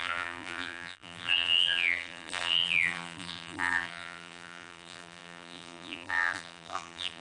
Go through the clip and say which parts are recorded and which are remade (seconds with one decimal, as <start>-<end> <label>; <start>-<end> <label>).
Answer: 0.0-7.2 remade

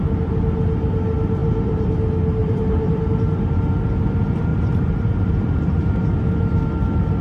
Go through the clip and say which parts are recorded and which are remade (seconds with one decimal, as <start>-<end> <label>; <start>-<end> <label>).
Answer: 0.0-1.4 recorded; 1.4-1.9 remade; 1.9-2.4 recorded; 2.4-3.0 remade; 3.0-4.5 recorded; 4.5-6.2 remade; 6.2-7.2 recorded

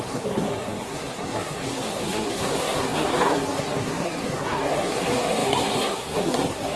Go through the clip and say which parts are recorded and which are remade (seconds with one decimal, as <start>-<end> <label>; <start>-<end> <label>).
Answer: 0.0-6.8 remade

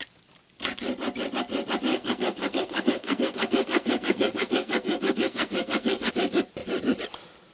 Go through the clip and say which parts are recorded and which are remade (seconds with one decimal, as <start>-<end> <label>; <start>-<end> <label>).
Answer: 0.0-1.9 recorded; 1.9-6.1 remade; 6.1-7.5 recorded